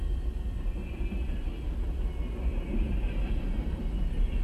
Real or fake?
real